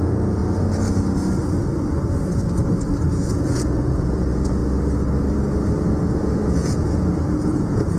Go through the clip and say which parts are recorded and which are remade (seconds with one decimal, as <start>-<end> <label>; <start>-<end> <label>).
0.0-0.4 remade; 0.4-3.1 recorded; 3.1-4.6 remade; 4.6-6.1 recorded; 6.1-8.0 remade